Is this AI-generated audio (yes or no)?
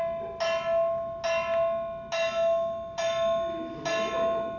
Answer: no